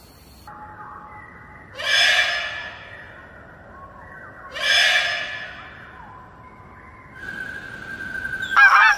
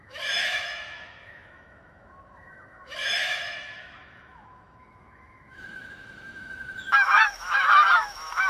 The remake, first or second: second